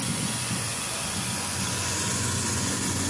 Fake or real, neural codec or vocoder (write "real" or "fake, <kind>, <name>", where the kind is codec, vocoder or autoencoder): fake, vocoder, Vocos